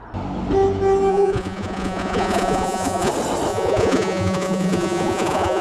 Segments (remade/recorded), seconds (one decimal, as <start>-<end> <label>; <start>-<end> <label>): 0.0-1.1 recorded; 1.1-3.1 remade; 3.1-3.5 recorded; 3.5-5.6 remade